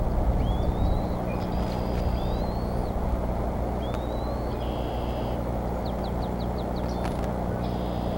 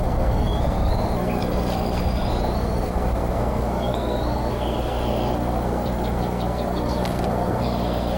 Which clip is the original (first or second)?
first